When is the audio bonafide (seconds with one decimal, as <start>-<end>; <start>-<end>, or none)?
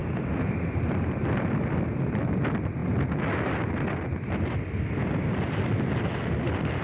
0.0-6.8